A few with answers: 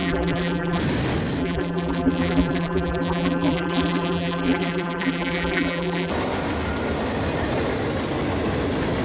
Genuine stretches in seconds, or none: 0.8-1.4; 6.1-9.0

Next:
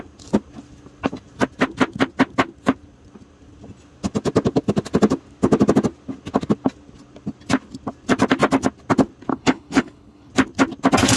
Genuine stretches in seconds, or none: 0.0-9.3; 10.3-11.2

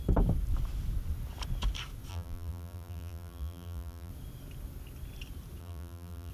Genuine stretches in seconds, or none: 0.0-2.1; 4.1-5.6